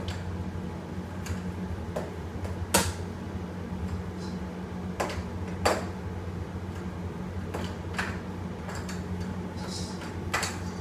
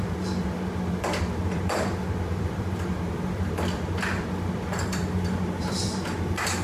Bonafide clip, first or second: first